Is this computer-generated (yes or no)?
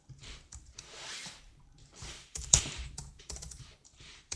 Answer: yes